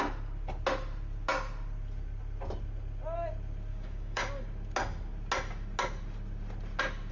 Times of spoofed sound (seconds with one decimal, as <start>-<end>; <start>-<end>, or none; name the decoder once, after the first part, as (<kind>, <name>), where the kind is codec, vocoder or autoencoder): 3.7-4.3 (codec, DAC)